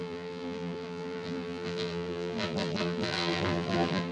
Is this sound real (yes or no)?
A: no